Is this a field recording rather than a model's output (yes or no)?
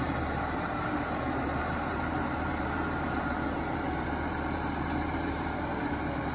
no